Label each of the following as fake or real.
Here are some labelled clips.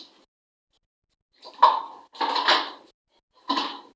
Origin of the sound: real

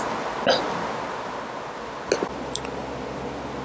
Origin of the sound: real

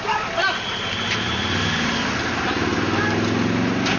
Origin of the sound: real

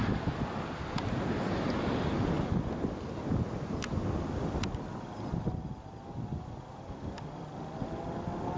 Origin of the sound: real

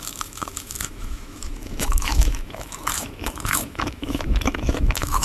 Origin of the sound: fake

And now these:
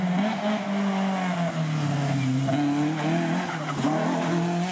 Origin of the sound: real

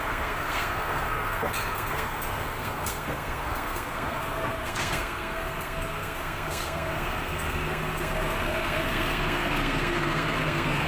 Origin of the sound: fake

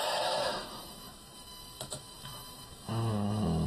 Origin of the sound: fake